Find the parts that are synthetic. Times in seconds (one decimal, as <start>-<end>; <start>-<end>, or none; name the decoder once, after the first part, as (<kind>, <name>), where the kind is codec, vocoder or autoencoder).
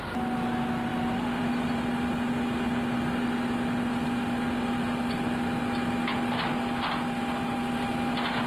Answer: 0.9-1.8 (vocoder, BigVGAN v2)